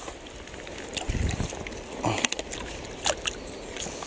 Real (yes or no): yes